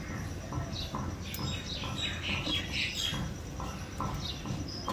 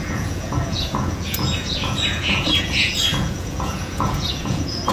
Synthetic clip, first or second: second